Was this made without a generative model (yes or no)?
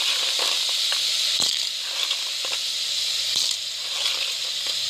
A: yes